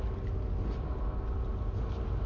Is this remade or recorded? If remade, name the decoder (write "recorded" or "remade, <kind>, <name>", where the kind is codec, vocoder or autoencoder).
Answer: recorded